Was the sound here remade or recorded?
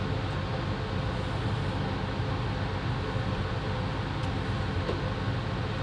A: recorded